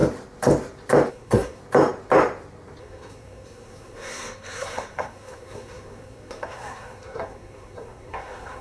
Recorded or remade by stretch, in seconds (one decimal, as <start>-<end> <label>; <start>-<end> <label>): 0.0-1.1 recorded; 1.1-1.6 remade; 1.6-2.8 recorded; 2.8-8.6 remade